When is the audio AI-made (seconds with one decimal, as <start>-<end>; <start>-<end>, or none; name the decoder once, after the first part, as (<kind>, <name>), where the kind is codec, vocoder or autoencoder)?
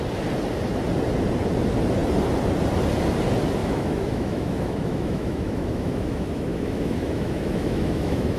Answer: 3.6-8.4 (autoencoder, DAC-VAE)